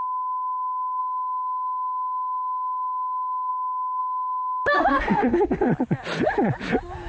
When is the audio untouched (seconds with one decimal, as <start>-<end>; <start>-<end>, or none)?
0.0-1.0; 3.5-4.0; 5.7-7.1